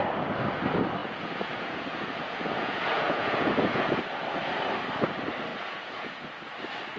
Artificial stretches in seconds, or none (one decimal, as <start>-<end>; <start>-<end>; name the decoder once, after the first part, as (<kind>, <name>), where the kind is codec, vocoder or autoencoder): 1.0-4.0 (vocoder, Vocos); 5.5-6.3